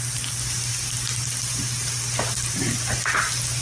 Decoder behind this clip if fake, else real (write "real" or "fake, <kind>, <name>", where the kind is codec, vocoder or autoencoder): real